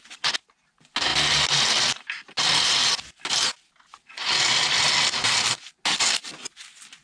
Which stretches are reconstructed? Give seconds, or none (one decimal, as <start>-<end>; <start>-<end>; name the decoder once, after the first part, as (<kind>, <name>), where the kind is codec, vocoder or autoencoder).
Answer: none